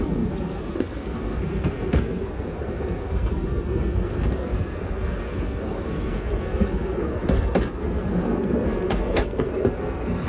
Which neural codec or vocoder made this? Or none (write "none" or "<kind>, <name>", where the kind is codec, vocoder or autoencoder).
codec, SNAC